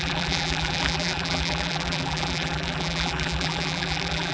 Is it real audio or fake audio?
fake